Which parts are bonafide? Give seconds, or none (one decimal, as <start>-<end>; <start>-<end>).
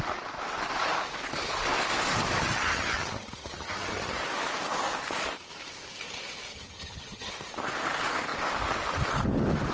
0.0-2.4; 4.2-6.5; 7.3-9.7